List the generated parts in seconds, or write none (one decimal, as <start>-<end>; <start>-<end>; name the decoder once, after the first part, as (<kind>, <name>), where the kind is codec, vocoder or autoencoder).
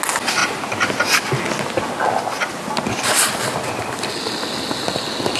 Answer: none